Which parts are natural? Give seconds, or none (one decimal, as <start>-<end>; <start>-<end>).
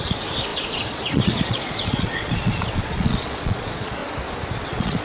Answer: 4.0-4.6